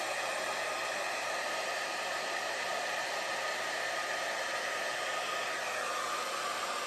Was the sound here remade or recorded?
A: recorded